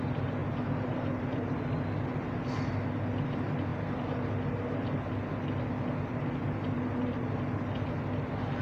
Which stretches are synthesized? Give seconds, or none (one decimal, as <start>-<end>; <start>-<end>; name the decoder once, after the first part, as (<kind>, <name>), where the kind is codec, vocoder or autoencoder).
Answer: 0.4-1.7 (vocoder, BigVGAN v2)